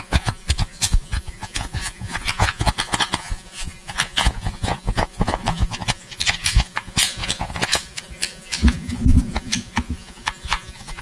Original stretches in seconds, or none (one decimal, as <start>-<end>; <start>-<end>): none